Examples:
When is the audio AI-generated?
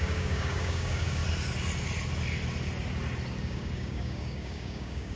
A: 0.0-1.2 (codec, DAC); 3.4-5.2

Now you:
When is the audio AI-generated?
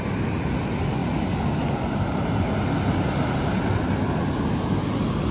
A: none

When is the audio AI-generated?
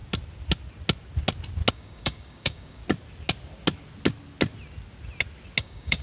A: 1.7-2.8 (codec, DAC); 5.6-6.0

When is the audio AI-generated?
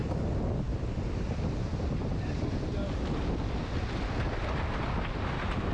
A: none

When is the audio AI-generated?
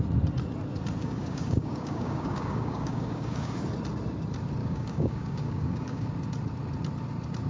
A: 1.0-3.7 (codec, DAC); 4.6-6.1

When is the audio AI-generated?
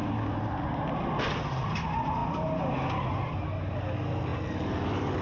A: none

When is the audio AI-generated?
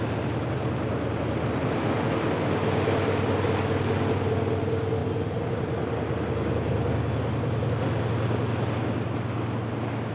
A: none